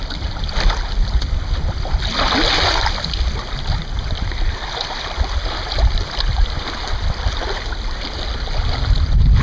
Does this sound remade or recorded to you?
recorded